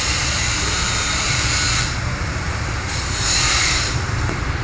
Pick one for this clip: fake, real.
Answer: fake